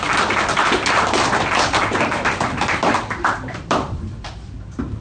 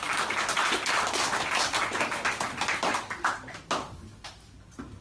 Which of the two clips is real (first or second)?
second